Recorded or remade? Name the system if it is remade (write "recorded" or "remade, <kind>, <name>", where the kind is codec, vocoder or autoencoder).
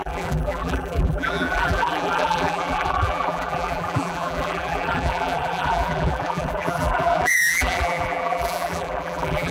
remade, vocoder, BigVGAN v2